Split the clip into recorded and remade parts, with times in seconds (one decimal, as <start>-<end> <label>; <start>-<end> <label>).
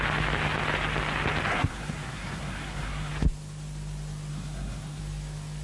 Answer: 0.0-1.5 recorded; 1.5-3.1 remade; 3.1-4.3 recorded; 4.3-5.0 remade; 5.0-5.6 recorded